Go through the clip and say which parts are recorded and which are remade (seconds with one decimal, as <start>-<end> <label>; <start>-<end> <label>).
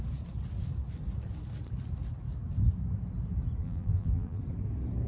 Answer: 0.0-3.6 recorded; 3.6-4.4 remade; 4.4-5.1 recorded